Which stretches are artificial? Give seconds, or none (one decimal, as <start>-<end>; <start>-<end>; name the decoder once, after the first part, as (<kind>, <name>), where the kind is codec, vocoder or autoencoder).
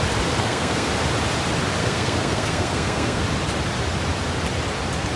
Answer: 0.4-0.9 (codec, SNAC); 1.8-3.2